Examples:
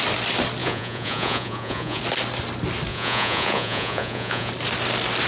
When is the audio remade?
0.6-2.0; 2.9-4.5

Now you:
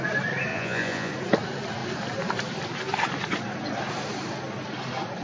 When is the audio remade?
0.5-1.1

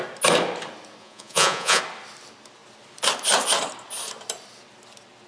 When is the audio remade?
1.0-1.8

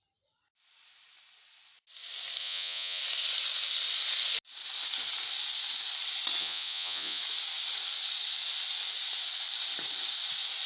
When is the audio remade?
2.4-3.0; 6.4-7.2

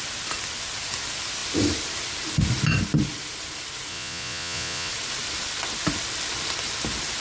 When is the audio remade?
3.9-4.9